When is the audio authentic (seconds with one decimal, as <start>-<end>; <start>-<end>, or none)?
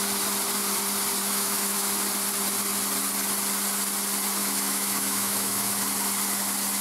0.0-1.2; 1.9-4.4; 5.8-6.8